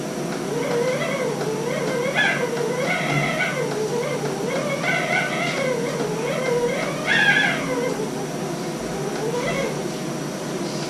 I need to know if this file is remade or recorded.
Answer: recorded